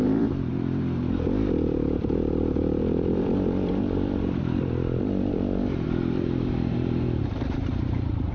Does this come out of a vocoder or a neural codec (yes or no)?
yes